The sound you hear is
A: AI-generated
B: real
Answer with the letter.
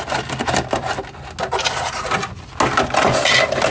B